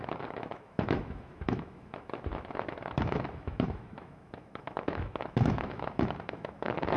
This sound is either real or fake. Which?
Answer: fake